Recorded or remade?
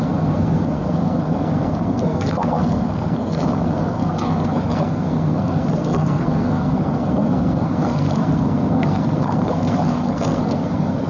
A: remade